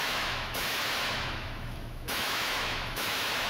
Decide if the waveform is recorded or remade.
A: remade